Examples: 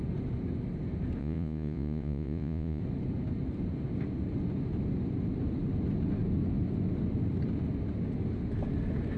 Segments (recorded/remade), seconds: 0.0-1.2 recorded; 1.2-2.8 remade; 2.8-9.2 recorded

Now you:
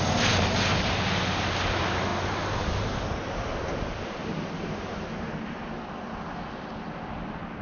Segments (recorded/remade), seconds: 0.0-7.6 recorded

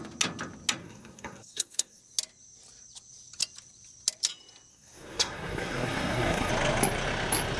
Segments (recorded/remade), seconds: 0.0-0.8 recorded; 0.8-2.0 remade; 2.0-4.7 recorded; 4.7-6.5 remade; 6.5-7.6 recorded

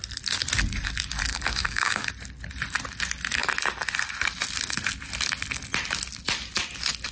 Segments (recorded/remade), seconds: 0.0-1.3 recorded; 1.3-2.1 remade; 2.1-7.1 recorded

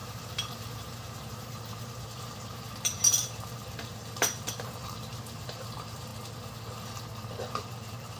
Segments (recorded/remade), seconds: 0.0-6.1 remade; 6.1-7.5 recorded; 7.5-8.2 remade